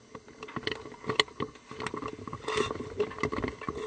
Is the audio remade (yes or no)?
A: no